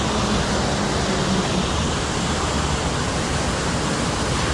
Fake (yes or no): no